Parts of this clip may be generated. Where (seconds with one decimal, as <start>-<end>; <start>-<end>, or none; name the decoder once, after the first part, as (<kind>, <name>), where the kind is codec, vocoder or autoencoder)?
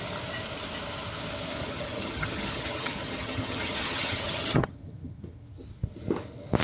1.6-5.6 (vocoder, HiFi-GAN)